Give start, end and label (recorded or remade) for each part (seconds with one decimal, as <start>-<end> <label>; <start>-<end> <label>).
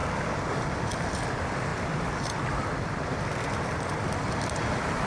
0.0-5.1 recorded